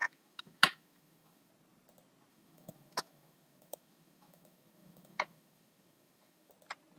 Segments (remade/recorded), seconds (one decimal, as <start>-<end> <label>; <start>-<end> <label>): 0.0-1.5 remade; 1.5-2.3 recorded; 2.3-6.5 remade; 6.5-7.0 recorded